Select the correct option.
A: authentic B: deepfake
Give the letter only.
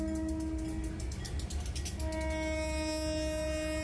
A